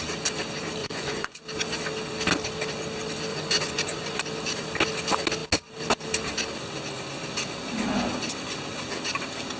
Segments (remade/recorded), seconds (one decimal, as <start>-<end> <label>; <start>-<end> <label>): 0.0-0.8 recorded; 0.8-1.4 remade; 1.4-3.3 recorded; 3.3-4.2 remade; 4.2-9.6 recorded